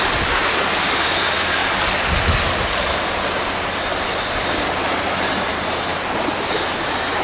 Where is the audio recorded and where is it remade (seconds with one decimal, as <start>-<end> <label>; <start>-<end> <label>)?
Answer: 0.0-5.9 recorded; 5.9-6.6 remade; 6.6-7.2 recorded

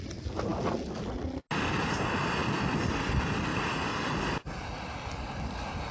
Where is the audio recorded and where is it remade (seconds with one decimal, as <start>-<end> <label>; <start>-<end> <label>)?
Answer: 0.0-5.9 recorded